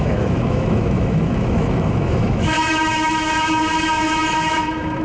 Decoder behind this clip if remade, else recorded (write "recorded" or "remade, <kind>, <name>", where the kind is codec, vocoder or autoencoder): remade, autoencoder, DAC-VAE